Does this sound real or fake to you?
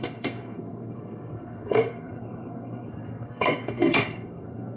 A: fake